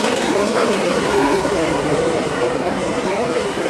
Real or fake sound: fake